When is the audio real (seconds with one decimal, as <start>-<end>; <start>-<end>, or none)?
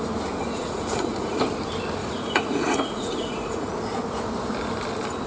0.0-0.4; 1.4-2.0; 3.7-5.3